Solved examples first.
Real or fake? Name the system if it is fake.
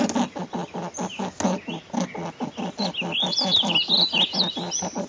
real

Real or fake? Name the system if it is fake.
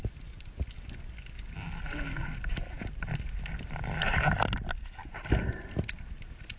real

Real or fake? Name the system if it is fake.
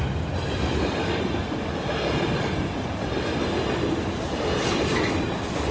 real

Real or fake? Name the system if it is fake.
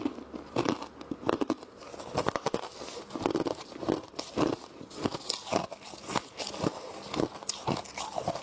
real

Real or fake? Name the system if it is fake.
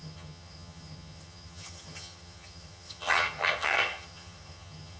fake, vocoder, HiFi-GAN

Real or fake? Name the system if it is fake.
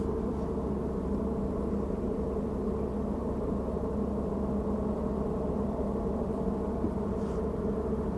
real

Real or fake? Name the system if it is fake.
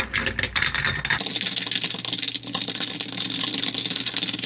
real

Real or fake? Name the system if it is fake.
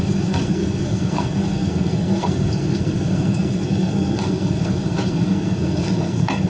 fake, codec, SNAC